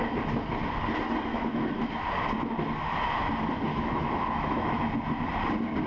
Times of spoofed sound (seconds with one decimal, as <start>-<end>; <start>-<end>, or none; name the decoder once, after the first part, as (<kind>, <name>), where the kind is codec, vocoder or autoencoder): 1.3-1.9 (autoencoder, DAC-VAE); 3.7-4.9